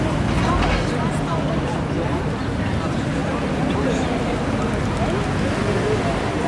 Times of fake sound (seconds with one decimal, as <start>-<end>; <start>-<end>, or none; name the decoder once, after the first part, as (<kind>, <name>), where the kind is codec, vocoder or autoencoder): none